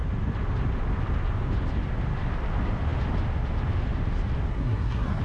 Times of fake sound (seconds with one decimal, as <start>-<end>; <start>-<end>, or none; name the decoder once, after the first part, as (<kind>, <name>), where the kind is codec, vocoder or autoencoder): 4.5-5.2 (codec, SNAC)